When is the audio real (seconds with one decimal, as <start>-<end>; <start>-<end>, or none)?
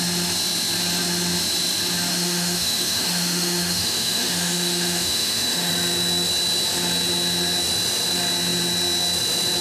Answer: 0.0-2.1; 5.7-9.6